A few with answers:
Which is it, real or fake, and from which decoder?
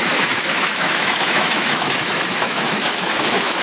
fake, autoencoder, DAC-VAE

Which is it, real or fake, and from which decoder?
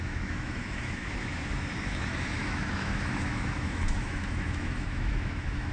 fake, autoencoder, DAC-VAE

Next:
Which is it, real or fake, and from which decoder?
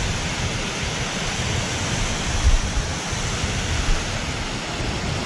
real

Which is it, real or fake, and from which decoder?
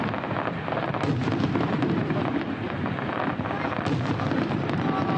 real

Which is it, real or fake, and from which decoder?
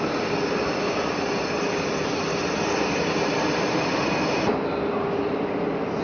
real